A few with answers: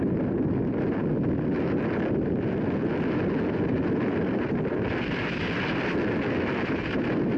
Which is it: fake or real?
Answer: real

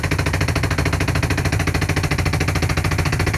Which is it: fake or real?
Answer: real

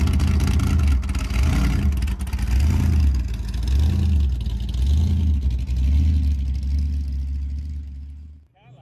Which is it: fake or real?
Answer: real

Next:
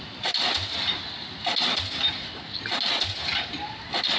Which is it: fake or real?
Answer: fake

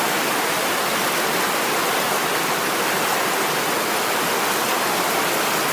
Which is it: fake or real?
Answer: real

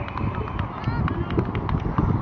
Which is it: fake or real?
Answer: real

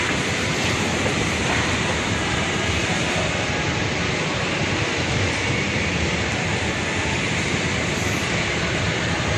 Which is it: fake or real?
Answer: fake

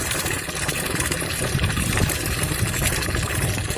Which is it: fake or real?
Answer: fake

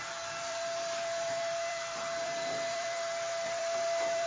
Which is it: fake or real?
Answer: fake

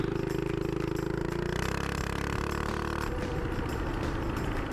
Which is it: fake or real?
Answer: real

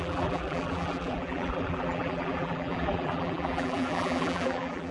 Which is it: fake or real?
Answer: fake